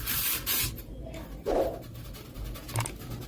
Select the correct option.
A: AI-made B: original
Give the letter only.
B